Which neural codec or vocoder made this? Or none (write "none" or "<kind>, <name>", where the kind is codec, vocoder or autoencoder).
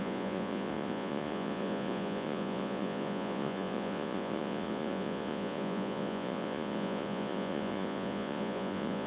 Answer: vocoder, Vocos